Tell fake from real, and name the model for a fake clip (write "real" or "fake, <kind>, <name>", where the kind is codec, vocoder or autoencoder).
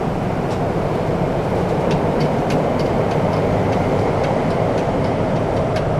fake, vocoder, BigVGAN v2